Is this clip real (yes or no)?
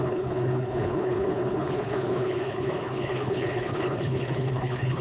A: no